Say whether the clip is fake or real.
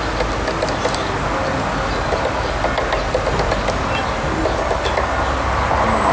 real